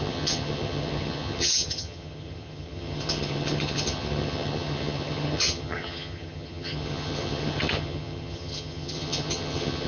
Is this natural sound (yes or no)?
no